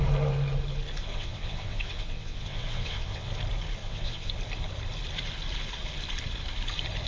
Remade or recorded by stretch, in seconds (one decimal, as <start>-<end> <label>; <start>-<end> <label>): 0.0-1.0 recorded; 1.0-3.3 remade; 3.3-3.8 recorded; 3.8-4.3 remade; 4.3-7.1 recorded